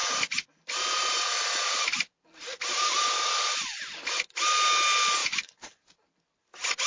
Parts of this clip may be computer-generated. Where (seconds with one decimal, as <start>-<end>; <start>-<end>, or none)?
none